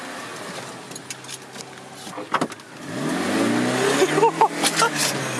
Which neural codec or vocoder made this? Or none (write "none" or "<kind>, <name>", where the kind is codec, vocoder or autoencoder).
none